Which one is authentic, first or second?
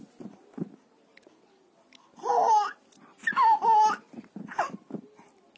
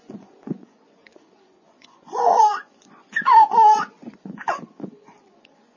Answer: first